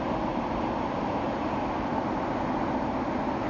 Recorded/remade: recorded